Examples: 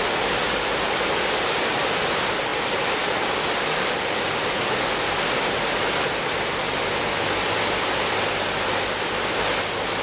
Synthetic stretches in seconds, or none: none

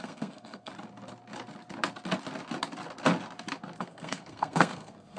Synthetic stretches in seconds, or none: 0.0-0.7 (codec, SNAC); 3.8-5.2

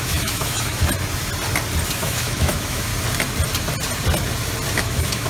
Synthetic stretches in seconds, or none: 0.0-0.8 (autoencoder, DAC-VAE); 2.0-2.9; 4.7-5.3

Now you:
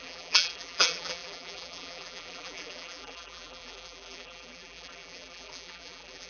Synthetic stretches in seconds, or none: 0.0-6.3 (vocoder, BigVGAN v2)